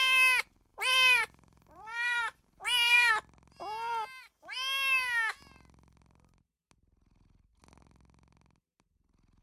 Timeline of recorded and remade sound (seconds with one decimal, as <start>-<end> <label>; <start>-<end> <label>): 0.0-0.7 recorded; 0.7-3.1 remade; 3.1-9.4 recorded